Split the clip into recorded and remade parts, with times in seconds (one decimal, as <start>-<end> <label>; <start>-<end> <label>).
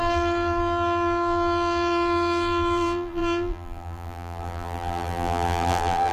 0.0-6.1 remade